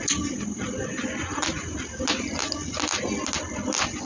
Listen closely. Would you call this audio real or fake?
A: real